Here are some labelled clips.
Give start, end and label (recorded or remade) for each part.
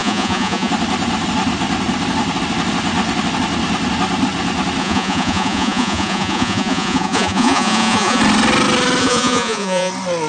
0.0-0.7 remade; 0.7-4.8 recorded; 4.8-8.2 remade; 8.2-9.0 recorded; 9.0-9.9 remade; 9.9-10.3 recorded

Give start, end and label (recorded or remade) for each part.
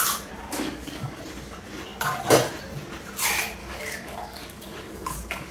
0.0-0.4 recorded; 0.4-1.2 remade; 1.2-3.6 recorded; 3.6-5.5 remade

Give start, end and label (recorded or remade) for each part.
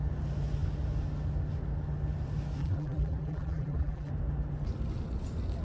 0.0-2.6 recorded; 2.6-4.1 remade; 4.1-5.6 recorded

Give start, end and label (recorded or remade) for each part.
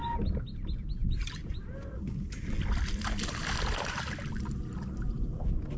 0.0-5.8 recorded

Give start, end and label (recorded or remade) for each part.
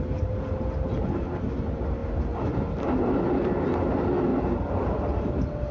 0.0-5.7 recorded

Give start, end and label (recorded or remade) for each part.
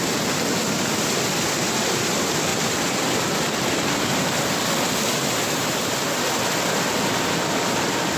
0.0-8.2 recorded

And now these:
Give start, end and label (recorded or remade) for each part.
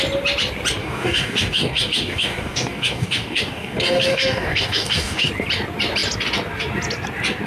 0.0-0.8 recorded; 0.8-5.3 remade; 5.3-7.5 recorded